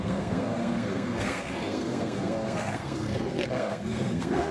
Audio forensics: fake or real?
fake